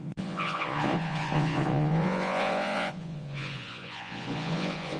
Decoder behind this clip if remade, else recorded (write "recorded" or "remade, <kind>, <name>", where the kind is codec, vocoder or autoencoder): remade, vocoder, Vocos